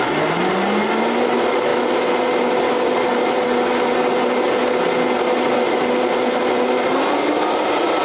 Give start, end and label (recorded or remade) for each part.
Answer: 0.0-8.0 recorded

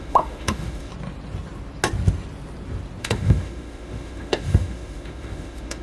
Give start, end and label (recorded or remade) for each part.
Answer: 0.0-0.9 remade; 0.9-3.0 recorded; 3.0-5.8 remade

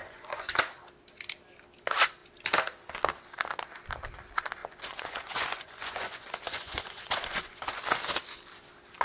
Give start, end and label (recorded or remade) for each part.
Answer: 0.0-0.6 remade; 0.6-4.6 recorded; 4.6-7.8 remade; 7.8-9.0 recorded

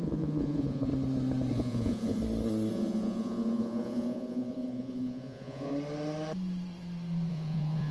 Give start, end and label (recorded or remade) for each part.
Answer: 0.0-0.9 remade; 0.9-1.5 recorded; 1.5-2.2 remade; 2.2-2.7 recorded; 2.7-5.7 remade; 5.7-7.3 recorded; 7.3-7.9 remade